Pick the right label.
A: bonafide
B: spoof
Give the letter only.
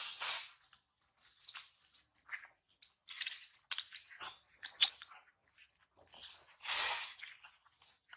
A